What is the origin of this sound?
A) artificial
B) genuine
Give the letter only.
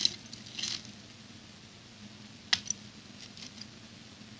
B